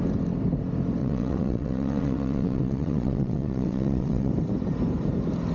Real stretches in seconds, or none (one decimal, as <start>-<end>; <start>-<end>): 0.0-1.0; 4.3-5.5